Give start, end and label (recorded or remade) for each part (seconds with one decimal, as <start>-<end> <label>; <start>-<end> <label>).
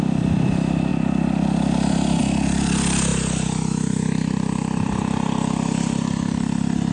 0.0-6.9 recorded